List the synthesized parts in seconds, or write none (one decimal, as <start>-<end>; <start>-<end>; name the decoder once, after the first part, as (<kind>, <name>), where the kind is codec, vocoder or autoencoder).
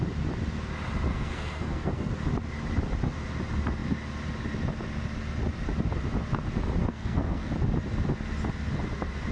1.1-2.1 (codec, SNAC); 6.8-7.5